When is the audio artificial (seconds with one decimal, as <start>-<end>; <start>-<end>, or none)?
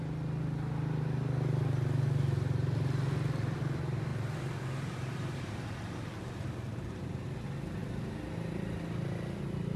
4.1-7.0